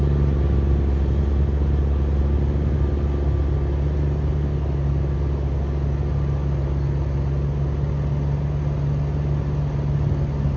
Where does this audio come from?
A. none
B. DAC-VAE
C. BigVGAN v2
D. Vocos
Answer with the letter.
A